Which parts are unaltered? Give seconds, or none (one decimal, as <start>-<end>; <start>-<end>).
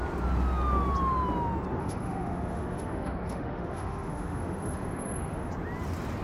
0.0-1.8; 5.5-6.2